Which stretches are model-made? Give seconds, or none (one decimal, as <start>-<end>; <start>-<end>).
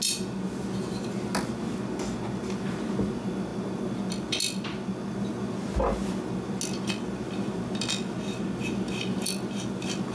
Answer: none